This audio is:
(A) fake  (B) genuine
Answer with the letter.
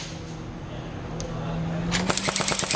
B